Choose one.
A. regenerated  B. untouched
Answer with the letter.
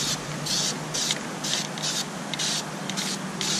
B